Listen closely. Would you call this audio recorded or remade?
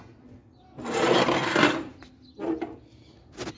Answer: recorded